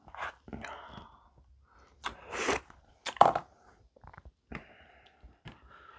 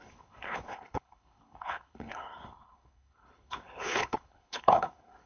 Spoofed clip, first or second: second